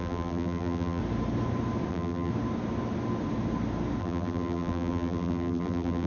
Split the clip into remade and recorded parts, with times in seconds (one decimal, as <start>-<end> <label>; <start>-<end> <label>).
0.0-1.0 remade; 1.0-1.9 recorded; 1.9-2.3 remade; 2.3-4.0 recorded; 4.0-6.1 remade